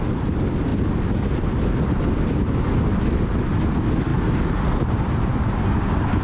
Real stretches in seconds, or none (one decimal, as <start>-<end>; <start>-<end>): 0.0-5.3